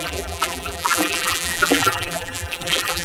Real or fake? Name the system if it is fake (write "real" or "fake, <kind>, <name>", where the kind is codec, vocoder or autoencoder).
fake, vocoder, BigVGAN v2